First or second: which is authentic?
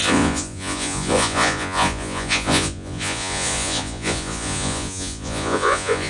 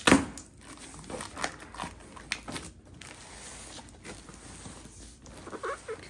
second